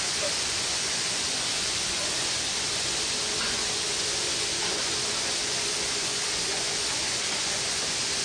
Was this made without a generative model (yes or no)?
no